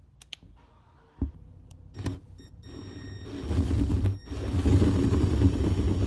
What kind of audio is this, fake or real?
real